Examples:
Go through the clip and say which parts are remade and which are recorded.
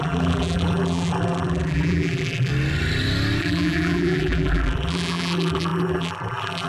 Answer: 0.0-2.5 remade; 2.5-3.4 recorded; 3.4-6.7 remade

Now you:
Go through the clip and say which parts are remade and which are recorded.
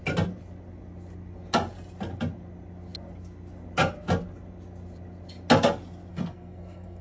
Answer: 0.0-6.1 recorded; 6.1-7.0 remade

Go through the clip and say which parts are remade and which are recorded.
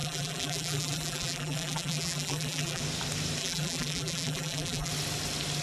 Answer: 0.0-2.8 remade; 2.8-3.4 recorded; 3.4-4.9 remade; 4.9-5.6 recorded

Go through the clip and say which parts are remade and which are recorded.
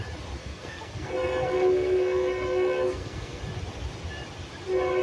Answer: 0.0-0.4 recorded; 0.4-3.4 remade; 3.4-5.0 recorded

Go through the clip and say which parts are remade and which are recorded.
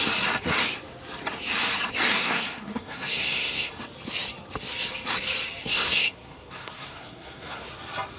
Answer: 0.0-2.1 recorded; 2.1-3.7 remade; 3.7-5.6 recorded; 5.6-7.7 remade; 7.7-8.2 recorded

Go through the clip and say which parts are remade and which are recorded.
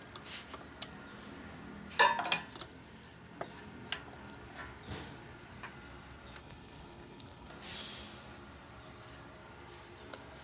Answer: 0.0-6.4 recorded; 6.4-7.5 remade; 7.5-10.4 recorded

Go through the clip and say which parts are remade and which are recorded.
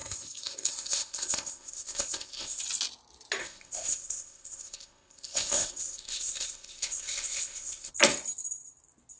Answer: 0.0-2.6 remade; 2.6-3.4 recorded; 3.4-7.9 remade; 7.9-9.2 recorded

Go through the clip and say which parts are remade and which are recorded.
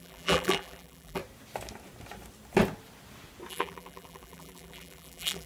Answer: 0.0-1.2 remade; 1.2-3.5 recorded; 3.5-5.5 remade